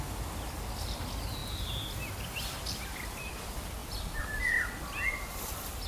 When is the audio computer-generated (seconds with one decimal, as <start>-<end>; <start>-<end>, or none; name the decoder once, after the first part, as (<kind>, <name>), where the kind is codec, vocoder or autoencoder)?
none

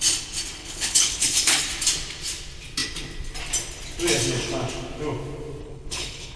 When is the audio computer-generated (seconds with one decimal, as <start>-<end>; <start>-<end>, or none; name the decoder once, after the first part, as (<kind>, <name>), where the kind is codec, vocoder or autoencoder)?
0.6-1.6 (codec, HILCodec); 5.6-6.4

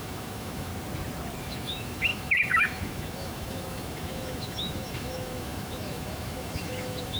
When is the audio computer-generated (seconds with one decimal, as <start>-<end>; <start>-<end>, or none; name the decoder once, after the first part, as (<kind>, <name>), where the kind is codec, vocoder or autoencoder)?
0.0-0.7 (autoencoder, DAC-VAE); 1.4-7.2